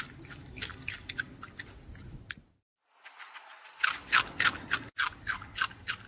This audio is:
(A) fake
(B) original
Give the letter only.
B